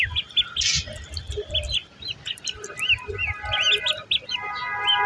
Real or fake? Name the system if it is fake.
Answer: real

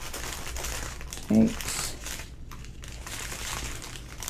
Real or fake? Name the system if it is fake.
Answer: real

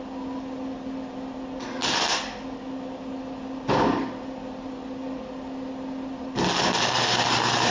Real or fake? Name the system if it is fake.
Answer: real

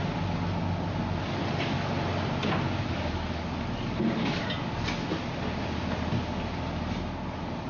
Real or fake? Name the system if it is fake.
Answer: real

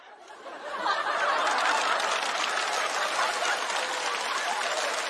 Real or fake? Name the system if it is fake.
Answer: real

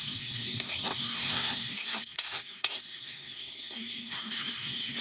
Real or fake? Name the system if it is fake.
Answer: fake, codec, SNAC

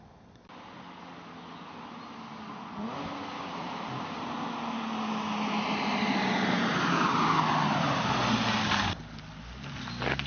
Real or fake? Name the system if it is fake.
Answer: real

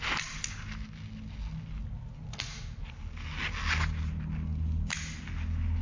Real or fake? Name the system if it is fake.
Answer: real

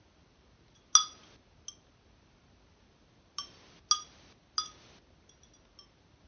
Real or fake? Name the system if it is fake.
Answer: real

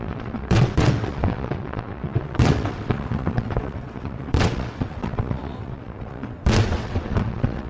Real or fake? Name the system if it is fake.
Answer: fake, vocoder, WaveNeXt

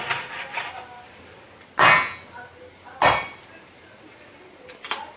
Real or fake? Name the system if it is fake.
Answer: real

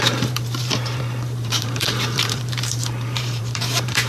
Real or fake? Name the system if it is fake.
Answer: fake, vocoder, BigVGAN v2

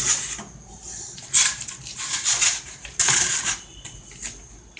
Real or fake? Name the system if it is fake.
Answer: real